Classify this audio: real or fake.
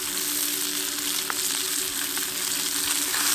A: real